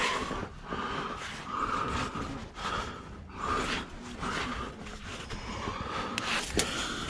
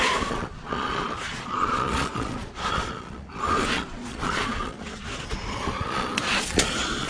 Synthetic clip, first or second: second